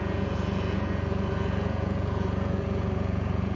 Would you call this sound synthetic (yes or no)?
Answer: yes